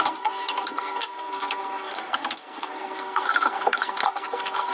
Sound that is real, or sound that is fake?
fake